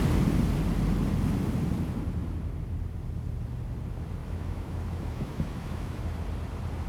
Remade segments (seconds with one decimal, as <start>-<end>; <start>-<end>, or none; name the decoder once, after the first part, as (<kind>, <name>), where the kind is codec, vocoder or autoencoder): 4.2-6.0 (autoencoder, DAC-VAE)